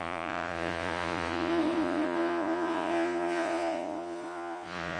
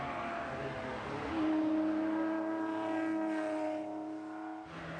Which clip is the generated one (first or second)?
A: first